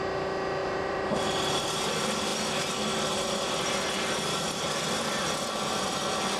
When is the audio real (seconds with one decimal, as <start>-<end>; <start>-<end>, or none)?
0.0-0.6; 1.9-6.4

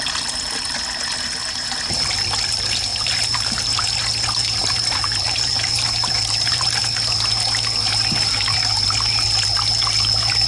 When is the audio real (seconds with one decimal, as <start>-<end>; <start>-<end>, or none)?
0.0-2.9; 4.0-4.6; 6.8-10.5

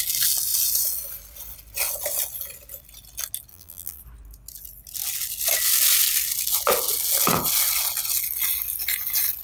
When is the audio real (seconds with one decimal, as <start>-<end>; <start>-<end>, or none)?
0.0-3.5; 4.0-9.4

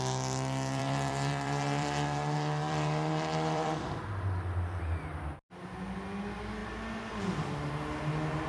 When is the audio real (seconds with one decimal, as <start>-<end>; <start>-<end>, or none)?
0.0-0.8; 4.0-8.5